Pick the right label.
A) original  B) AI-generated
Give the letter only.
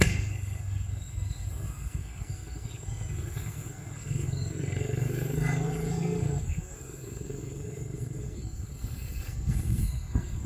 B